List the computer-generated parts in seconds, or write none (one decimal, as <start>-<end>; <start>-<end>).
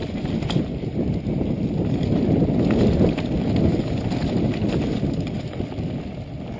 none